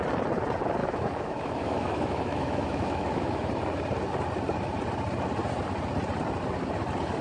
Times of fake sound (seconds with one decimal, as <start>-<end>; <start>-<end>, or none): 0.8-3.5